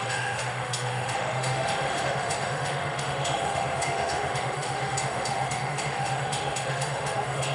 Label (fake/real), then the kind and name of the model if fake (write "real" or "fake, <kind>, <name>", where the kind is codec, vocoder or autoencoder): fake, autoencoder, DAC-VAE